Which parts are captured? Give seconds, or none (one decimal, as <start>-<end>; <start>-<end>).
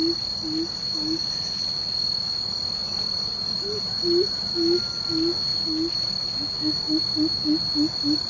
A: 0.0-2.8; 3.9-8.3